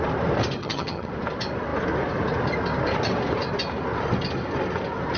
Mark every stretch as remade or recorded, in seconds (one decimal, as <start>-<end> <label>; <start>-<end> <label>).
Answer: 0.0-0.6 recorded; 0.6-1.1 remade; 1.1-5.2 recorded